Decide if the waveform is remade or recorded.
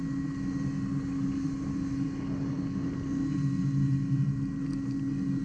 recorded